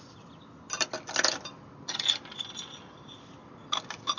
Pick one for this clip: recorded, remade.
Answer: recorded